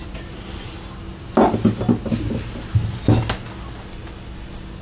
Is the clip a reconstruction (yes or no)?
no